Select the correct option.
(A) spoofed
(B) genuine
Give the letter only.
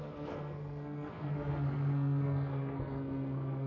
A